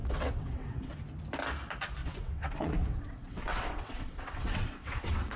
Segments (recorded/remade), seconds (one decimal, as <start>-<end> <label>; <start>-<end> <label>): 0.0-0.9 remade; 0.9-2.0 recorded; 2.0-5.4 remade